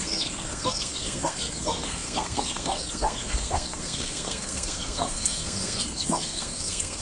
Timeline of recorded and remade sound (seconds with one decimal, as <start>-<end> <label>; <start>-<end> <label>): 0.0-7.0 remade